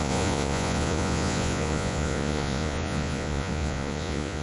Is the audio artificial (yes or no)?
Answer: yes